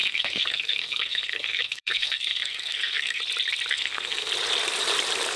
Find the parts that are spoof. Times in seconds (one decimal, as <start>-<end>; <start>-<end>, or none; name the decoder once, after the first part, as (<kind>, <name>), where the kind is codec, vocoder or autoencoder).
0.0-3.2 (codec, SNAC); 3.7-4.3